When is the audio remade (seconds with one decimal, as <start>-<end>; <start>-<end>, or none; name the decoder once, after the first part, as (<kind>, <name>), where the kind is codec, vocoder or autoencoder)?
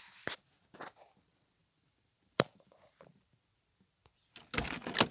1.6-3.7 (vocoder, BigVGAN v2)